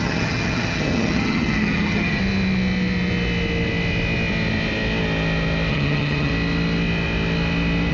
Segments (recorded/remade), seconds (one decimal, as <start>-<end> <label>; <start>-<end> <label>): 0.0-2.2 remade; 2.2-5.7 recorded; 5.7-6.3 remade; 6.3-7.9 recorded